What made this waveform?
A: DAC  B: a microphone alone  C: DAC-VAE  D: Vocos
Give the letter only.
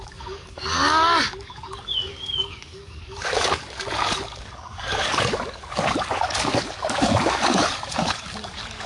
A